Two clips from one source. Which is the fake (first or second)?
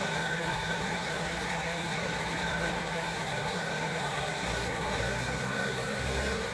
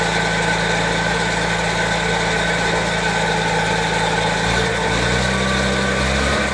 first